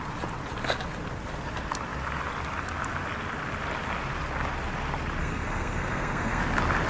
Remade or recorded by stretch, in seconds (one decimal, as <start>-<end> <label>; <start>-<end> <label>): 0.0-5.2 recorded; 5.2-6.4 remade; 6.4-6.9 recorded